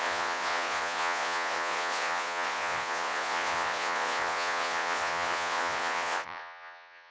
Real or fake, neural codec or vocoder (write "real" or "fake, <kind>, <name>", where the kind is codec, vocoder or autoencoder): fake, vocoder, Vocos